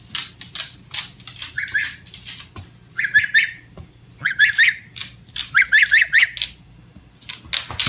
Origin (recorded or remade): recorded